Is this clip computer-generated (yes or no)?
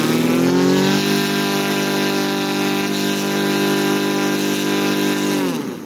no